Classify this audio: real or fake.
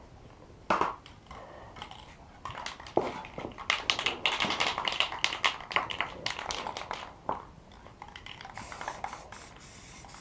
real